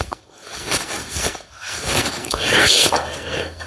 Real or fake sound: fake